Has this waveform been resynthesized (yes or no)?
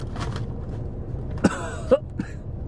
no